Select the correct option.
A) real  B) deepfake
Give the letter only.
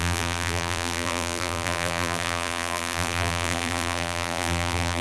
B